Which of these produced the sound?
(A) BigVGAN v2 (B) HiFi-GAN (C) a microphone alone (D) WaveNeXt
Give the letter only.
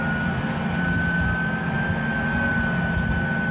C